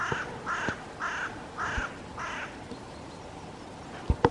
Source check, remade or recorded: recorded